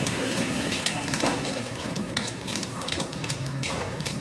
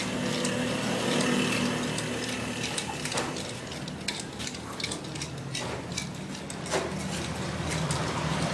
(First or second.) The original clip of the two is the second